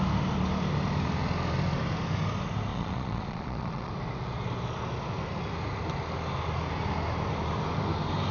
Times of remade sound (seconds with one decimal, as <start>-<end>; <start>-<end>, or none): 2.7-3.9